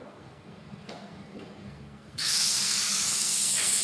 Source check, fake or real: fake